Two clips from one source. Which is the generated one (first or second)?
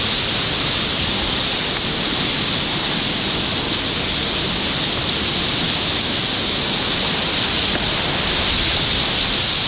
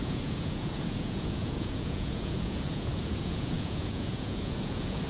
second